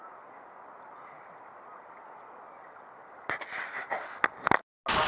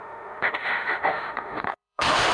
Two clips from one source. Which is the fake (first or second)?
second